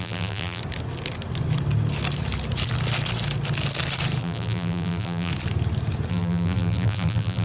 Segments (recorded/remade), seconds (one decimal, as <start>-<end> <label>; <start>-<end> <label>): 0.0-0.6 remade; 0.6-4.2 recorded; 4.2-5.3 remade; 5.3-6.1 recorded; 6.1-7.4 remade